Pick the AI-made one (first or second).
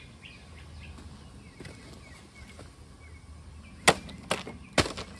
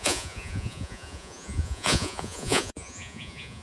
second